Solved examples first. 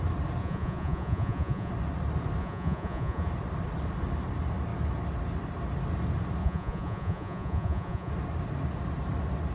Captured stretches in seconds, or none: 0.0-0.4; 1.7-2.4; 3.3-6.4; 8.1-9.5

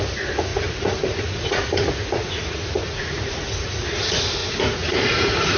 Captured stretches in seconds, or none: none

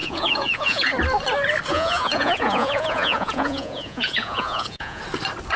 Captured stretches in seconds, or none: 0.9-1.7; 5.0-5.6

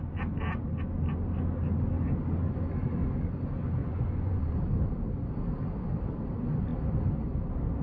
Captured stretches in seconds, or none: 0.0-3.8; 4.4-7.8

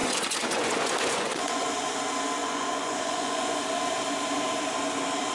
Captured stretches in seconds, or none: 1.7-2.4; 3.6-5.3

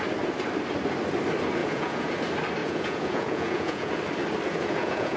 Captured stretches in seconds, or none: 0.0-1.6; 2.1-2.6; 3.9-4.5

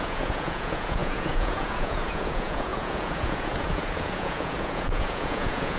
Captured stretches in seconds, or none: none

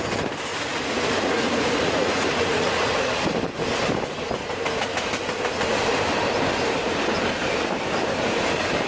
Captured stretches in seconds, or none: 0.0-0.5; 3.1-8.9